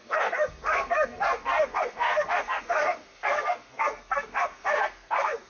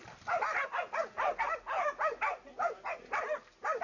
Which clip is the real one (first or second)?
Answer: second